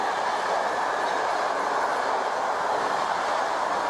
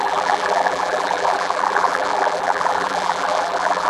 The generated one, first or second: second